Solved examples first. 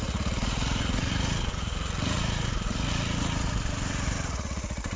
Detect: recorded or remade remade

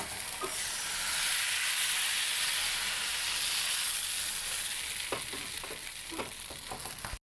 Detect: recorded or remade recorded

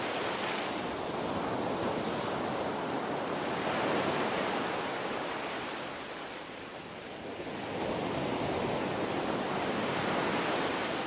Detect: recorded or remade recorded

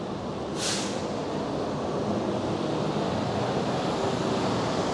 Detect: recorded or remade recorded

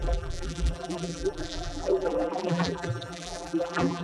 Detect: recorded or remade remade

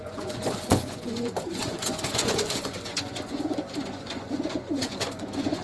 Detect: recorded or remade remade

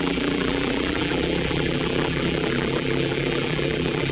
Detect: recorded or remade remade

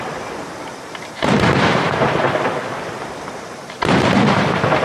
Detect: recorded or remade remade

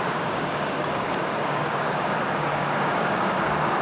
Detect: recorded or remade remade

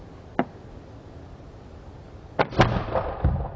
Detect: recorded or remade recorded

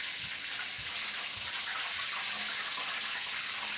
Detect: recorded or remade recorded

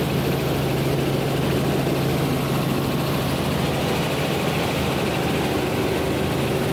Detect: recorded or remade recorded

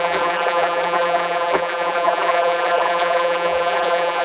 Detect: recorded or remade remade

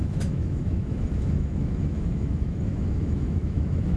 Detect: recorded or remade remade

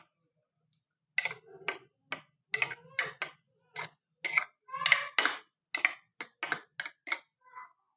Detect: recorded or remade recorded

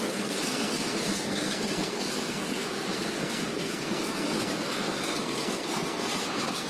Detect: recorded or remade remade